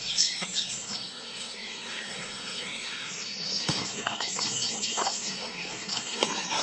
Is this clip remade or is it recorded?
remade